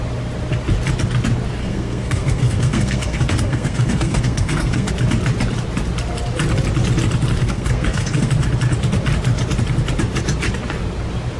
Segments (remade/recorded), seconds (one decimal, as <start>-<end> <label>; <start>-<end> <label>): 0.0-1.6 recorded; 1.6-4.9 remade; 4.9-7.4 recorded; 7.4-8.3 remade; 8.3-11.4 recorded